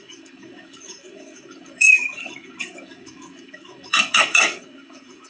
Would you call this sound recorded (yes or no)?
no